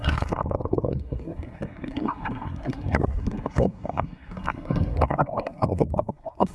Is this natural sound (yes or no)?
no